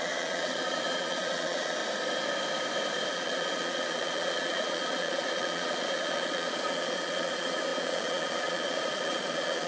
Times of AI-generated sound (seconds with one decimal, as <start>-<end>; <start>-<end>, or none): 0.0-1.8; 3.1-9.7